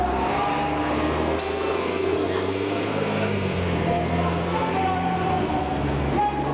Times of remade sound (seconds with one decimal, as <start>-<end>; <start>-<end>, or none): 0.8-4.7; 5.3-6.0